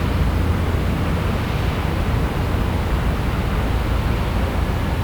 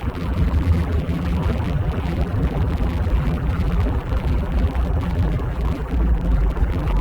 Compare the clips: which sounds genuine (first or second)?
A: first